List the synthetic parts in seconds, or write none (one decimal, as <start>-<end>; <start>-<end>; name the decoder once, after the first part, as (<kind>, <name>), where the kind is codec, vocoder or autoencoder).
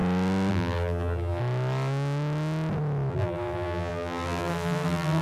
0.5-1.4 (vocoder, BigVGAN v2); 3.1-5.2